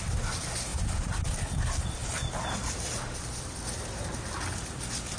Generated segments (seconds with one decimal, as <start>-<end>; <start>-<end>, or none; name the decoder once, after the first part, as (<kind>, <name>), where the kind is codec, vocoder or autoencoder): none